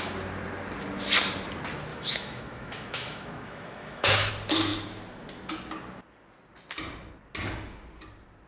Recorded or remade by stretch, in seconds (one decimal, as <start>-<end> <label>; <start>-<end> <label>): 0.0-1.9 recorded; 1.9-4.3 remade; 4.3-8.5 recorded